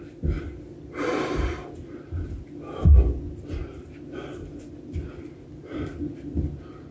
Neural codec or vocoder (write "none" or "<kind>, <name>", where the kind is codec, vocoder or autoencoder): none